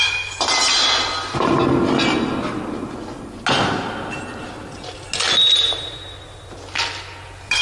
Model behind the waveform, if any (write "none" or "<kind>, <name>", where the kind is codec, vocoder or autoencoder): none